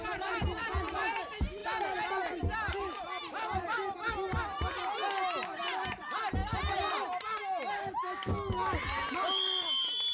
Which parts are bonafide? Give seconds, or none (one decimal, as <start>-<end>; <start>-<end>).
0.0-10.1